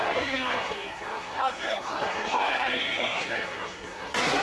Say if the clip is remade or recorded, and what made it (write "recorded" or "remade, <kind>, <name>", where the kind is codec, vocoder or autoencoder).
remade, codec, SNAC